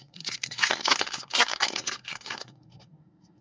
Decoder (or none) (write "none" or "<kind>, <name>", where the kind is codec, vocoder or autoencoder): codec, SNAC